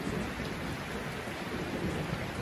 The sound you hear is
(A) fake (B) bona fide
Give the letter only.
B